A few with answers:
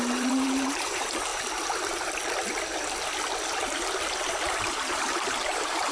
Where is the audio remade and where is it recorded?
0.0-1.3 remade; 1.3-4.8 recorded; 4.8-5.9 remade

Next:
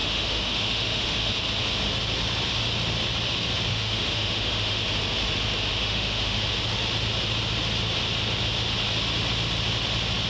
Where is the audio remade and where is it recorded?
0.0-1.3 remade; 1.3-3.7 recorded; 3.7-4.8 remade; 4.8-5.8 recorded; 5.8-6.4 remade; 6.4-10.3 recorded

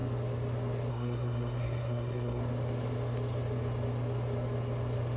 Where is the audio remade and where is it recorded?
0.0-0.9 recorded; 0.9-2.4 remade; 2.4-5.2 recorded

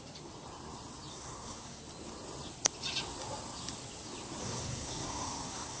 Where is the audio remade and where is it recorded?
0.0-1.1 recorded; 1.1-1.8 remade; 1.8-4.4 recorded; 4.4-5.8 remade

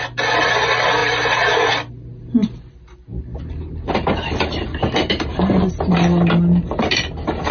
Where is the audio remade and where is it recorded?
0.0-7.5 recorded